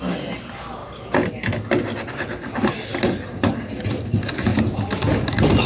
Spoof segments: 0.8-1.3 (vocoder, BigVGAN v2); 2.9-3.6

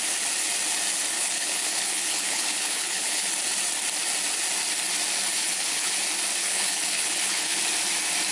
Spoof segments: 1.1-3.3 (codec, HILCodec); 5.3-5.9; 6.4-7.6

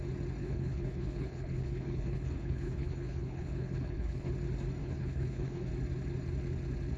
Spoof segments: 0.4-4.3 (codec, HILCodec); 4.8-5.7